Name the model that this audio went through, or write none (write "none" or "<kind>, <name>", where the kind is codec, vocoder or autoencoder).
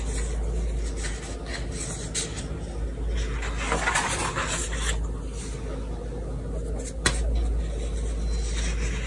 none